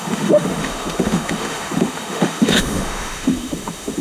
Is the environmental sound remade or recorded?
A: remade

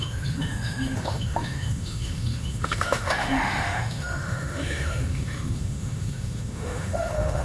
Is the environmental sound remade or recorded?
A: remade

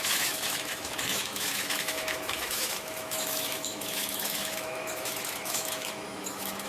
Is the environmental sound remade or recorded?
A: remade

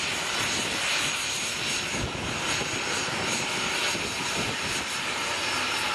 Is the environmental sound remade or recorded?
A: recorded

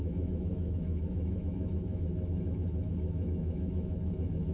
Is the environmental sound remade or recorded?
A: remade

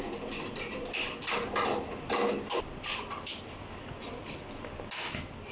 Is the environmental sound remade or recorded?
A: recorded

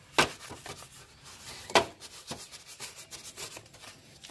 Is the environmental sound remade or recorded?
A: recorded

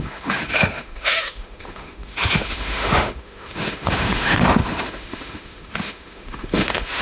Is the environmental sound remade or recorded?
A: remade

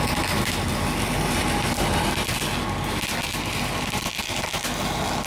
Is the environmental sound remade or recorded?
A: recorded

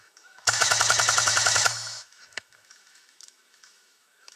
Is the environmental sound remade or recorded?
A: remade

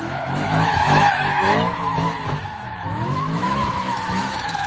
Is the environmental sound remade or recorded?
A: remade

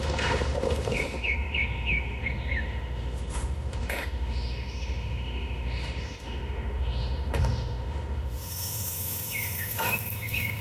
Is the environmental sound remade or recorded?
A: remade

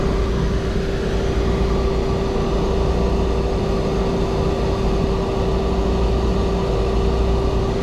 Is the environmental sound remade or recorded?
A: recorded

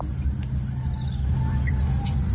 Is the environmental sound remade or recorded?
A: recorded